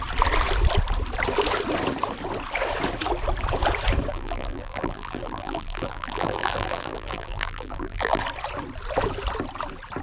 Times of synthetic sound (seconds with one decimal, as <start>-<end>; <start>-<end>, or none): 4.1-8.2